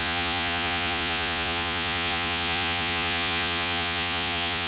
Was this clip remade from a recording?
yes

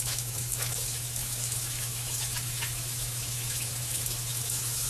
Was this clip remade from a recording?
yes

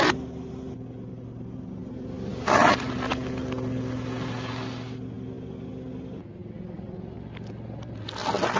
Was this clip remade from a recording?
no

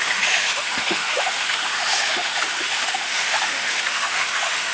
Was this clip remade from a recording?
yes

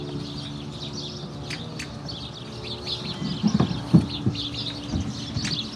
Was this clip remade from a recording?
no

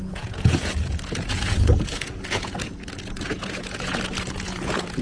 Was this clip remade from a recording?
yes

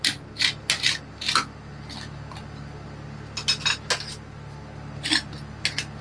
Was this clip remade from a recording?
no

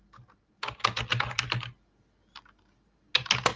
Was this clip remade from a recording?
no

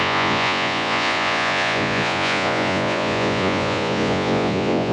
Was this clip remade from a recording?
yes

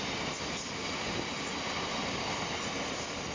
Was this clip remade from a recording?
no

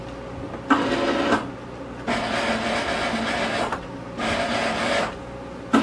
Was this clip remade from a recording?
no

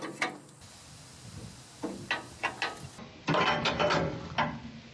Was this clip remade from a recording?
no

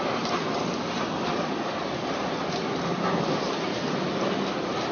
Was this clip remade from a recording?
no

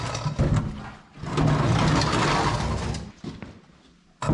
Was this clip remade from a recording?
no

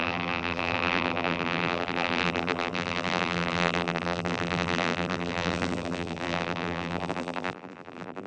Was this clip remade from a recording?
yes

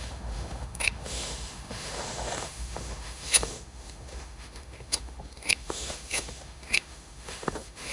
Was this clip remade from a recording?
yes